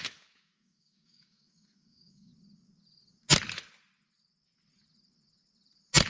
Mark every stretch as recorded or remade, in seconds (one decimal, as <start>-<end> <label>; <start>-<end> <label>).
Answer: 0.0-2.3 remade; 2.3-6.1 recorded